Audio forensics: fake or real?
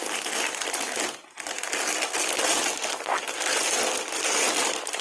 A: real